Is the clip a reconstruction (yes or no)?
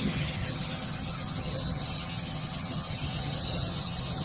yes